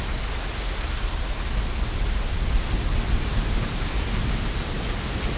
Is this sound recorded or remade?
recorded